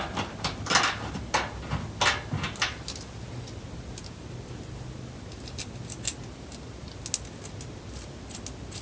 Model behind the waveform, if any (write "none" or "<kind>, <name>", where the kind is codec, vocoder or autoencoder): none